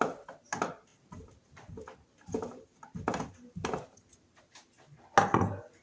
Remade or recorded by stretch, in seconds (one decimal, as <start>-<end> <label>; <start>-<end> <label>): 0.0-5.8 recorded